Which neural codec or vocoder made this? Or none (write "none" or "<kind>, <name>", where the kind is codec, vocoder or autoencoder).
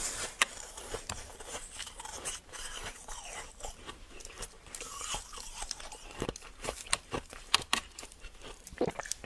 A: vocoder, BigVGAN v2